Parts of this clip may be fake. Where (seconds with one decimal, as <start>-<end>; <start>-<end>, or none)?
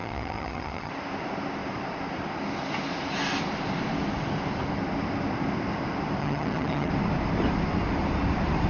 0.0-0.9; 6.2-6.9